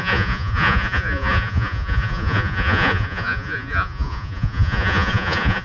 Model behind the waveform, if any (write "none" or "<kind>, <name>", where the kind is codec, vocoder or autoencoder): vocoder, Vocos